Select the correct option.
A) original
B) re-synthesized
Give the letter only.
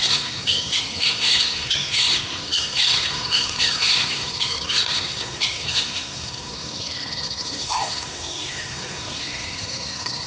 B